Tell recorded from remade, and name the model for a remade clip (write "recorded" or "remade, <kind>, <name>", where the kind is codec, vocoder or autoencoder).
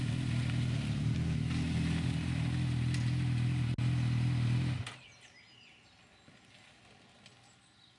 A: recorded